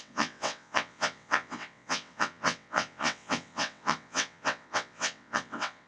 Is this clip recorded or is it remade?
remade